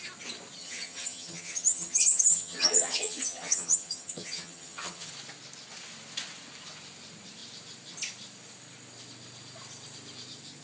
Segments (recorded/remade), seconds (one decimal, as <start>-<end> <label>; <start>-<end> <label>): 0.0-0.6 recorded; 0.6-5.1 remade; 5.1-10.6 recorded